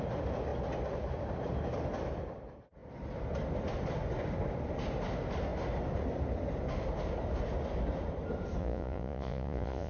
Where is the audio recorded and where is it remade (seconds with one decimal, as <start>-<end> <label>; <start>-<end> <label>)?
0.0-8.6 recorded; 8.6-9.9 remade